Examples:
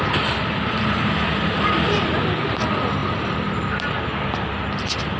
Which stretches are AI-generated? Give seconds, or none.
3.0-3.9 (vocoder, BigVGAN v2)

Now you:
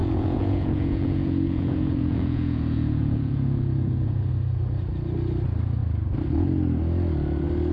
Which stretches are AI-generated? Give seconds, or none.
0.0-4.3 (vocoder, Vocos)

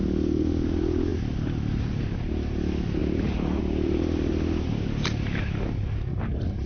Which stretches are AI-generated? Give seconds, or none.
1.1-2.0 (vocoder, BigVGAN v2); 3.0-3.6

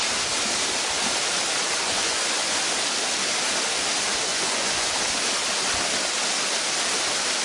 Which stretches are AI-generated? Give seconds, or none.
1.8-2.6 (vocoder, Vocos); 4.3-4.9

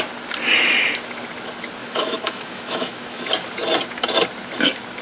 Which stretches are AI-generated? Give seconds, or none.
1.8-3.3 (autoencoder, DAC-VAE)

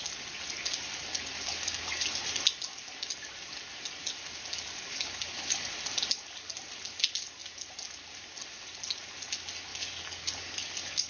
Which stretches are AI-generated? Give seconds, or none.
1.3-2.2 (codec, DAC); 4.9-5.7; 9.7-11.1